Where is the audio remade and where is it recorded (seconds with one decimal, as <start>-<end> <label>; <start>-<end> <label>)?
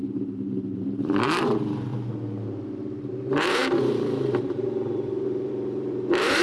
0.0-1.9 remade; 1.9-3.1 recorded; 3.1-6.4 remade